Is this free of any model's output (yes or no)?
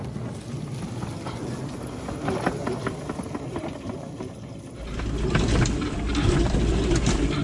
yes